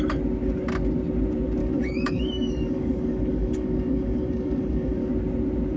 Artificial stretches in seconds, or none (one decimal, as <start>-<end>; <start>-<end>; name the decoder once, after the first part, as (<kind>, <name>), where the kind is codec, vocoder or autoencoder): 1.6-5.1 (codec, DAC)